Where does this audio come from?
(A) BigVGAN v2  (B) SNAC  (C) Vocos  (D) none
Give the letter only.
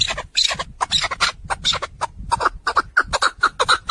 D